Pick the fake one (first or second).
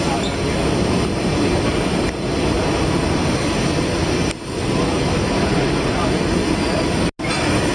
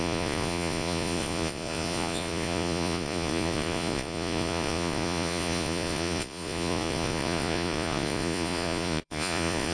second